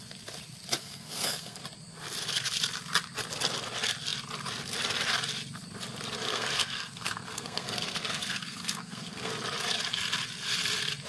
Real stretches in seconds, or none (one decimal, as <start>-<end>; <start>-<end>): 0.0-0.8; 1.6-6.3; 9.3-11.1